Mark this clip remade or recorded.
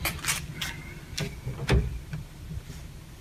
recorded